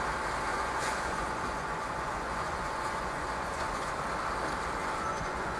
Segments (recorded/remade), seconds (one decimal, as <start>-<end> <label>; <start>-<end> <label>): 0.0-0.5 recorded; 0.5-3.9 remade; 3.9-4.8 recorded; 4.8-5.6 remade